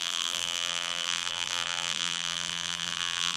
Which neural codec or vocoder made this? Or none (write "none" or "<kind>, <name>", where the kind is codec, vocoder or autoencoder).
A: vocoder, BigVGAN v2